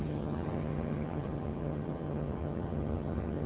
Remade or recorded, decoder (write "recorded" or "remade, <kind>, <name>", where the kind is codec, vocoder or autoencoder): remade, vocoder, HiFi-GAN